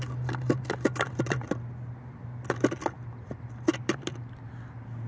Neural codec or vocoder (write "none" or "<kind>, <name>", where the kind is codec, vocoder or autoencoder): vocoder, BigVGAN v2